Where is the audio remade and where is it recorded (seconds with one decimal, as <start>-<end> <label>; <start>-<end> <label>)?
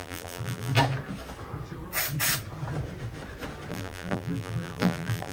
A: 0.0-0.7 remade; 0.7-3.7 recorded; 3.7-5.3 remade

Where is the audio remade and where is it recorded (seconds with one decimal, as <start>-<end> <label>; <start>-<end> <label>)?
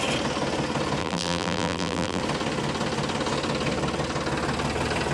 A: 0.0-1.0 recorded; 1.0-2.2 remade; 2.2-5.1 recorded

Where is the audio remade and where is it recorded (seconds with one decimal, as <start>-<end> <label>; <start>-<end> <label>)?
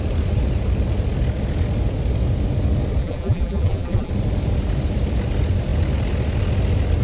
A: 0.0-3.0 recorded; 3.0-4.1 remade; 4.1-7.0 recorded